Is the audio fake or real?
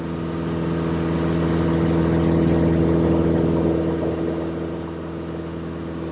real